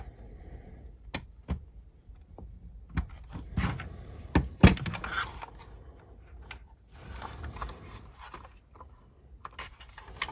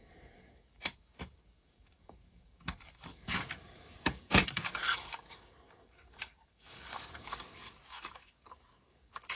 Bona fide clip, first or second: first